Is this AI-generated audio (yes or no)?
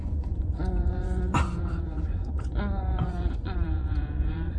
yes